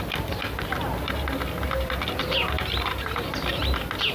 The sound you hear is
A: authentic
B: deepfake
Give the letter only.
A